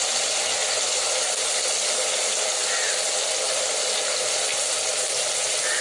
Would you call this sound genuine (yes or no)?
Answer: yes